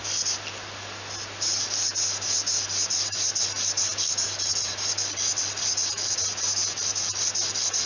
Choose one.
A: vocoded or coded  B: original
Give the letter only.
B